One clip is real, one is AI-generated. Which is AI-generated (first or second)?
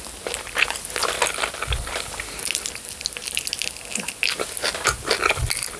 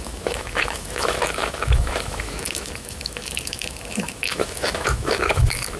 second